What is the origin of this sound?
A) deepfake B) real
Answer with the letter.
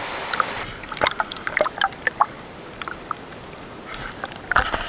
A